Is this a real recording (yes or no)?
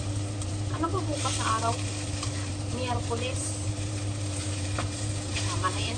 no